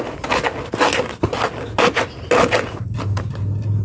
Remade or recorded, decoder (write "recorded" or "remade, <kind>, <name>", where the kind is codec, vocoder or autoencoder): recorded